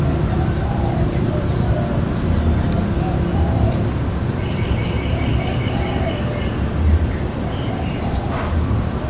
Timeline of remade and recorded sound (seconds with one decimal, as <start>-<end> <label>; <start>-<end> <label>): 0.0-9.1 recorded